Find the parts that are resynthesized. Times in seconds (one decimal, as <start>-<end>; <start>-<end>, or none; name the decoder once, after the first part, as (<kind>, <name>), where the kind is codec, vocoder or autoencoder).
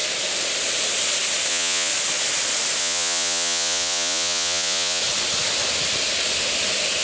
1.5-1.9 (vocoder, Vocos); 2.8-5.0